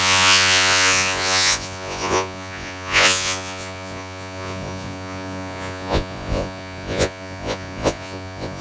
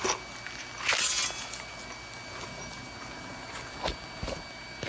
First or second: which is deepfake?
first